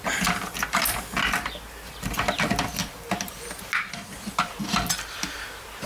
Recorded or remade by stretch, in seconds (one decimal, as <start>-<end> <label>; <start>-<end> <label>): 0.0-5.9 recorded

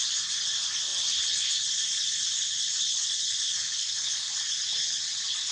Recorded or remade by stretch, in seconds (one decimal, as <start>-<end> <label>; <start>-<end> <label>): 0.0-3.6 recorded; 3.6-4.3 remade; 4.3-5.5 recorded

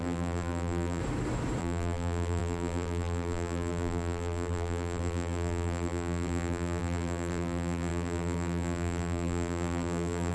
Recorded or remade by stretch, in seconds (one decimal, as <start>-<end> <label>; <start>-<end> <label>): 0.0-1.0 remade; 1.0-1.6 recorded; 1.6-10.3 remade

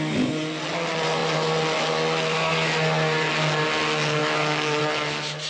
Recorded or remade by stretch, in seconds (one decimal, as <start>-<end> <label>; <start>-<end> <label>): 0.0-4.2 recorded; 4.2-4.8 remade; 4.8-5.5 recorded

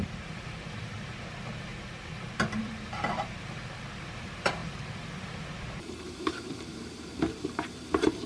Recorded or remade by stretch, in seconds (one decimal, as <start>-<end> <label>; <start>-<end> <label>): 0.0-1.7 remade; 1.7-2.6 recorded; 2.6-4.6 remade; 4.6-5.2 recorded; 5.2-8.3 remade

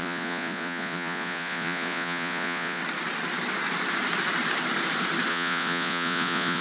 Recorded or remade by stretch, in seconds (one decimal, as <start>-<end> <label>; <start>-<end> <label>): 0.0-2.8 remade; 2.8-5.3 recorded; 5.3-6.6 remade

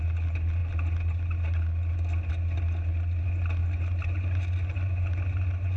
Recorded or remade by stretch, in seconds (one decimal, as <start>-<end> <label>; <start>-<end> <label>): 0.0-5.8 recorded

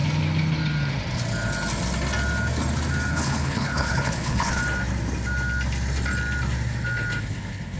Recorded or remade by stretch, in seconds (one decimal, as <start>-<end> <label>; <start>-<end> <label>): 0.0-3.1 recorded; 3.1-4.6 remade; 4.6-7.2 recorded; 7.2-7.8 remade